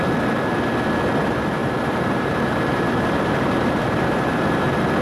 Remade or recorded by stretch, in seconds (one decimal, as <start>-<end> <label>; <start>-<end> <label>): 0.0-1.6 recorded; 1.6-4.6 remade; 4.6-5.0 recorded